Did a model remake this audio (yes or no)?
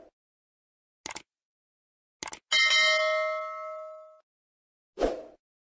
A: no